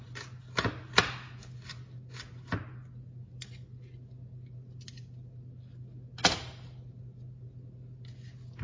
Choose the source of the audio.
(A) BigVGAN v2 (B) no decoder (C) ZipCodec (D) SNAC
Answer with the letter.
B